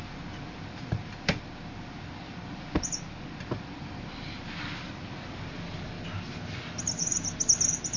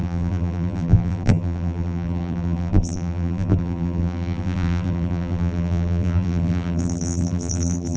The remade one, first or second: second